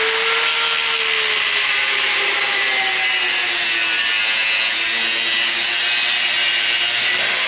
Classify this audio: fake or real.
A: real